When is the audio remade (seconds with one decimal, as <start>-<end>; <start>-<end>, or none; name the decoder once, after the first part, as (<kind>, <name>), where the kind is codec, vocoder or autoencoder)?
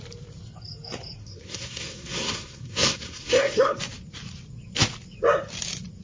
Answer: 1.2-3.8 (codec, SNAC)